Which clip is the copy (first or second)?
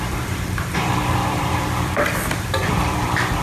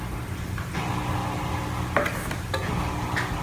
first